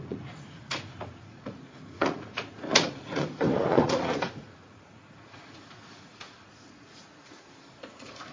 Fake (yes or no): yes